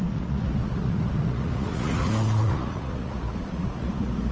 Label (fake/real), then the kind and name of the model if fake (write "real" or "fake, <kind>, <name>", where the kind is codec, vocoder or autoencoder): fake, vocoder, Vocos